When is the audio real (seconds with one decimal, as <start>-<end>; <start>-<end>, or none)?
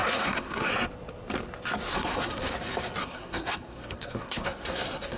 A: 0.7-1.9; 2.5-3.0